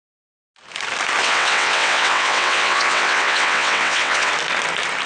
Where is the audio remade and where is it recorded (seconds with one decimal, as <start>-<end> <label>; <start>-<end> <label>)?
0.0-1.2 recorded; 1.2-4.3 remade; 4.3-5.1 recorded